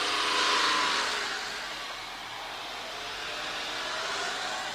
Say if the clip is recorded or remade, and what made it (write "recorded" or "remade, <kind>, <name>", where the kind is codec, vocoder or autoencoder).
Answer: recorded